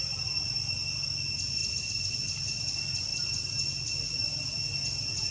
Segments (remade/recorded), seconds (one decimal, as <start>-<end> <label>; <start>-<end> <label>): 0.0-5.3 recorded

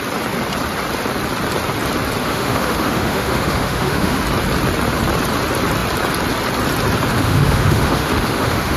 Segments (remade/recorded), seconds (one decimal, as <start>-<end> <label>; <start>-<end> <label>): 0.0-2.2 recorded; 2.2-4.2 remade; 4.2-7.1 recorded; 7.1-8.8 remade

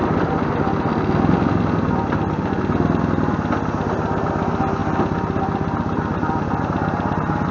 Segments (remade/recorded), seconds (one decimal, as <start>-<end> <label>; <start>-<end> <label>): 0.0-2.5 remade; 2.5-4.8 recorded; 4.8-6.6 remade; 6.6-7.5 recorded

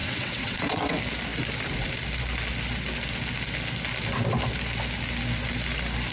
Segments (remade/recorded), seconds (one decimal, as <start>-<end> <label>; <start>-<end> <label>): 0.0-0.9 remade; 0.9-6.1 recorded